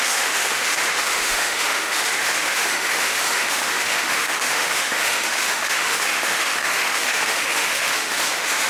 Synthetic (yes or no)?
yes